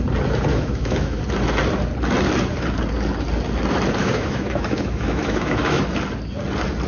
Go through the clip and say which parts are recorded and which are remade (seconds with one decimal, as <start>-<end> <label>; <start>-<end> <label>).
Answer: 0.0-0.5 recorded; 0.5-1.2 remade; 1.2-4.0 recorded; 4.0-5.8 remade; 5.8-6.9 recorded